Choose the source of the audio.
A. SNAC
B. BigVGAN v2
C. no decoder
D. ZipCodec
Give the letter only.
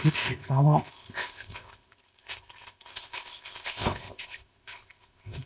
D